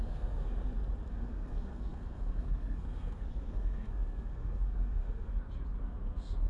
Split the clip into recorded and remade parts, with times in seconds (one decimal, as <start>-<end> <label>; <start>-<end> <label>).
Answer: 0.0-0.5 remade; 0.5-1.1 recorded; 1.1-5.3 remade; 5.3-5.8 recorded; 5.8-6.5 remade